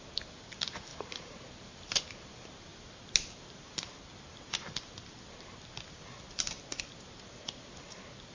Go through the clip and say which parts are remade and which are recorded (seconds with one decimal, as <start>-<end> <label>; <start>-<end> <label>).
0.0-0.9 recorded; 0.9-2.0 remade; 2.0-8.3 recorded